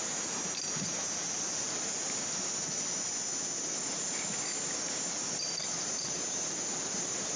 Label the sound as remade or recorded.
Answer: recorded